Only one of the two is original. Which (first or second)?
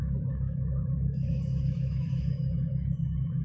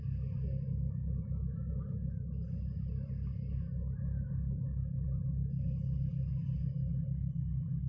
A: second